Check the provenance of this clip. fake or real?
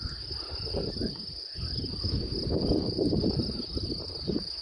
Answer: real